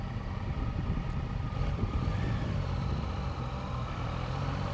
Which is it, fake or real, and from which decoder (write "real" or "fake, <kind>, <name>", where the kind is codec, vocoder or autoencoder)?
fake, vocoder, BigVGAN v2